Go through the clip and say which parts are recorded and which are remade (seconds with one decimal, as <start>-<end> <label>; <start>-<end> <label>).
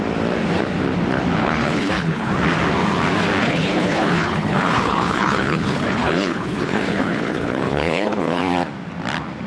0.0-1.4 recorded; 1.4-2.3 remade; 2.3-3.4 recorded; 3.4-8.4 remade; 8.4-9.5 recorded